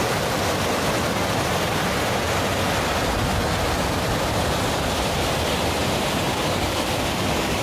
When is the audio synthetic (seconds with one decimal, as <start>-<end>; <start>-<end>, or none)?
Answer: 6.3-7.6